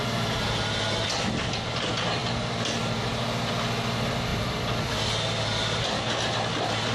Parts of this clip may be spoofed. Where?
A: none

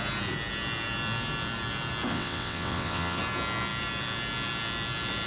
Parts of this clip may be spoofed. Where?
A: 2.1-3.2 (vocoder, WaveNeXt)

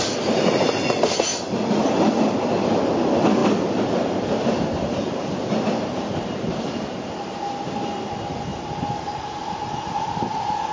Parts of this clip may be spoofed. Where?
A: 3.4-7.1 (vocoder, BigVGAN v2)

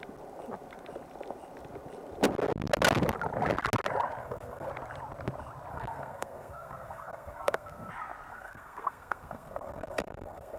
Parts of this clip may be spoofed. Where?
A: 4.2-4.7 (codec, SNAC); 5.7-7.9; 8.3-10.6

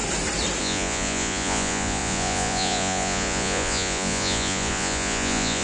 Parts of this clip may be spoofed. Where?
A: 0.6-5.6 (vocoder, Vocos)

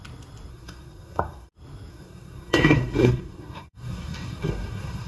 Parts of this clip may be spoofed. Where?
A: 0.5-1.5 (codec, SNAC); 1.9-5.1

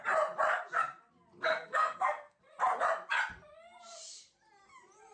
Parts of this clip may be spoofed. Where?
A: 1.5-2.4 (codec, SNAC)